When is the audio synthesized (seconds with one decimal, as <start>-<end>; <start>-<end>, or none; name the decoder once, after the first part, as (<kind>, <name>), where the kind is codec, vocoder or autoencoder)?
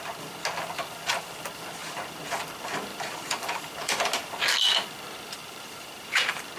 1.8-2.4 (vocoder, BigVGAN v2); 2.9-4.0; 5.4-6.6